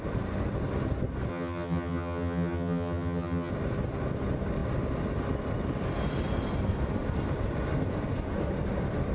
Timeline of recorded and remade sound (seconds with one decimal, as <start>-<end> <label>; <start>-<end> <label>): 0.0-1.3 recorded; 1.3-3.5 remade; 3.5-9.1 recorded